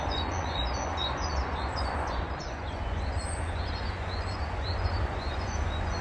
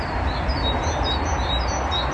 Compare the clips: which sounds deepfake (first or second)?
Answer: first